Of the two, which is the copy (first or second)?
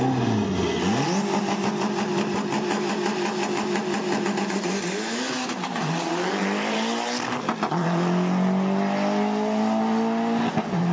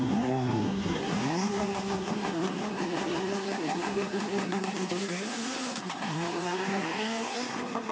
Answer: second